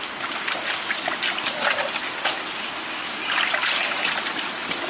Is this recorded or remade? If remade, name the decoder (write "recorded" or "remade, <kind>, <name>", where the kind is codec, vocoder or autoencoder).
recorded